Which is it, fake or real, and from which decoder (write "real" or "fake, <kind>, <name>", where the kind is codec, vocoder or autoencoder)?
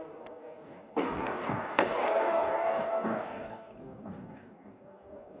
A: fake, codec, DAC